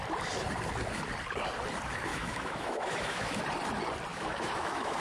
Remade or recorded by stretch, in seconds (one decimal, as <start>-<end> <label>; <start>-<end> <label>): 0.0-2.1 recorded; 2.1-3.4 remade; 3.4-4.1 recorded; 4.1-5.0 remade